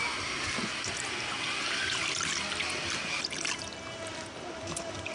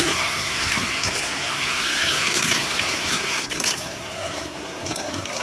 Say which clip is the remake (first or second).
second